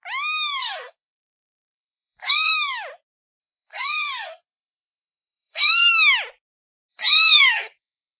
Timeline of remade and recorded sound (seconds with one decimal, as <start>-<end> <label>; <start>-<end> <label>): 0.0-0.6 recorded; 0.6-2.5 remade; 2.5-3.4 recorded; 3.4-5.9 remade; 5.9-6.9 recorded; 6.9-8.2 remade